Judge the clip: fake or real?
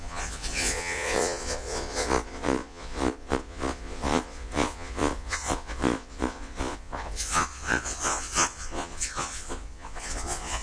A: fake